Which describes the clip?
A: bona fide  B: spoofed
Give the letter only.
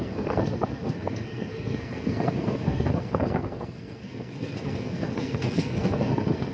B